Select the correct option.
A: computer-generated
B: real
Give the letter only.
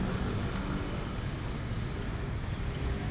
B